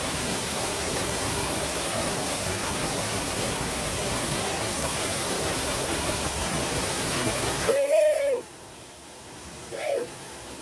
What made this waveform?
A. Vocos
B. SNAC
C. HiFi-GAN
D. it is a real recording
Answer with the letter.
B